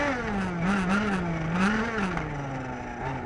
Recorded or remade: recorded